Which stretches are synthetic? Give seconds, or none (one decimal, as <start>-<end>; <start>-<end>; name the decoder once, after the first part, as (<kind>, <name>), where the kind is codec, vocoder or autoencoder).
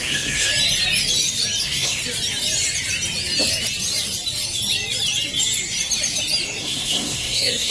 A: 0.0-0.5 (codec, SNAC); 1.6-2.0; 6.6-7.7